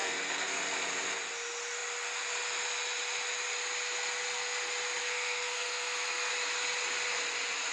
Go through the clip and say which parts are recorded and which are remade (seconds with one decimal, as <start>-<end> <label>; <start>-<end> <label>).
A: 0.0-0.6 remade; 0.6-5.0 recorded; 5.0-6.3 remade; 6.3-7.7 recorded